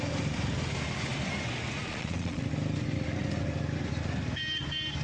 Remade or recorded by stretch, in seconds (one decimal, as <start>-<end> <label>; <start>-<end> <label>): 0.0-1.8 recorded; 1.8-2.4 remade; 2.4-5.0 recorded